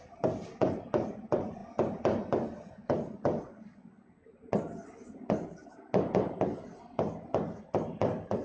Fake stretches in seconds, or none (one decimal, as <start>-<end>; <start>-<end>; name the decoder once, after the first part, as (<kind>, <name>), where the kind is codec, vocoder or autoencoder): 0.0-1.6 (vocoder, BigVGAN v2); 5.8-8.4